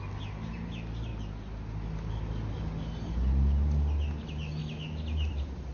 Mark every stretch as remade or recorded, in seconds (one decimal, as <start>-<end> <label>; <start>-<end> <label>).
0.0-5.7 recorded